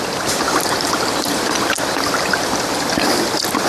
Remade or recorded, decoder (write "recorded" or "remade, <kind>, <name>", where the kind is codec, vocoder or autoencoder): recorded